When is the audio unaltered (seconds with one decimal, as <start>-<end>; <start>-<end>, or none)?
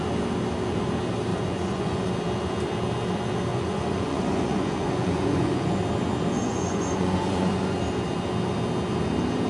0.0-1.3; 2.1-3.5; 5.8-6.4; 7.8-9.5